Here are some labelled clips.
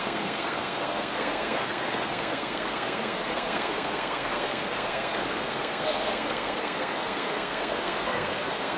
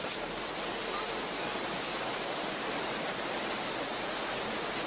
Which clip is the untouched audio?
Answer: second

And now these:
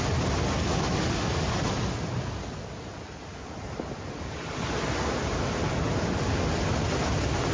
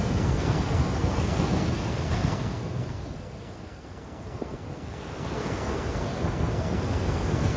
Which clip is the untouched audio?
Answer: first